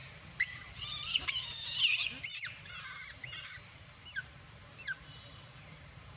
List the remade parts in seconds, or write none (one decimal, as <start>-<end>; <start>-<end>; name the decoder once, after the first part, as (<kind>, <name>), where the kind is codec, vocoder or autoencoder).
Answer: 0.0-1.3 (vocoder, BigVGAN v2); 2.3-6.2